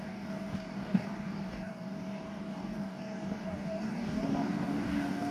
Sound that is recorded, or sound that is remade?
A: remade